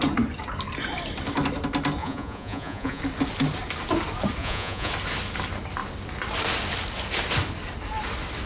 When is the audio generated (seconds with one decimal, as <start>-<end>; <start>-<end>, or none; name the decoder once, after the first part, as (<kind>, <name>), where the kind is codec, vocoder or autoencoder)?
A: 2.0-3.0 (vocoder, Vocos); 4.4-4.9